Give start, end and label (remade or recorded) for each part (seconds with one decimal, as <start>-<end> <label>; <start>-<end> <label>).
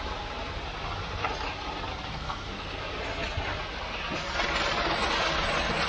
0.0-2.1 recorded; 2.1-2.8 remade; 2.8-5.9 recorded